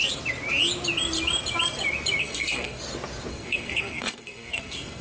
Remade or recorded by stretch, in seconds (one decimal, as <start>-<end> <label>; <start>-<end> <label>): 0.0-2.2 recorded; 2.2-2.8 remade; 2.8-3.3 recorded; 3.3-5.0 remade